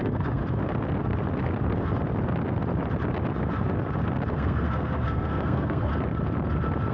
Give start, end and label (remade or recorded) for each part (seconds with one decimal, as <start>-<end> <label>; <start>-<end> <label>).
0.0-0.4 remade; 0.4-4.3 recorded; 4.3-5.9 remade; 5.9-6.9 recorded